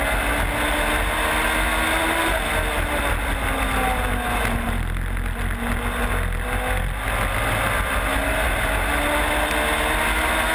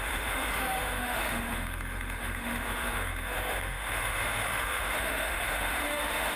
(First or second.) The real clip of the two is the first